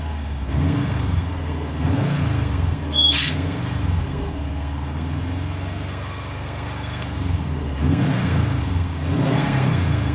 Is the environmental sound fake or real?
fake